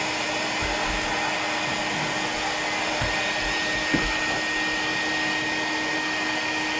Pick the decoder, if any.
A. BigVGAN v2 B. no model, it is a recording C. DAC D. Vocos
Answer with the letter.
B